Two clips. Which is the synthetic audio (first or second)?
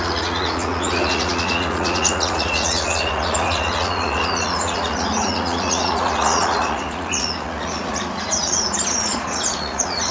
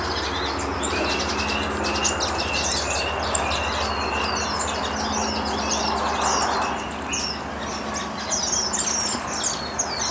first